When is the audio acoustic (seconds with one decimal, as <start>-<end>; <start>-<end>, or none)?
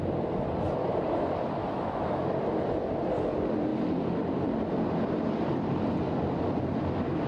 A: 0.0-1.6; 2.3-7.3